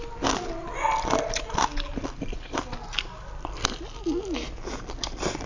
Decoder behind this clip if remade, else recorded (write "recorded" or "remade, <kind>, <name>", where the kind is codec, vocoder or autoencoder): recorded